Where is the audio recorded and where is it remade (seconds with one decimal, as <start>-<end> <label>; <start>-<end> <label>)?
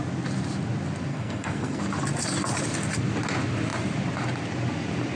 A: 0.0-1.1 recorded; 1.1-1.8 remade; 1.8-5.2 recorded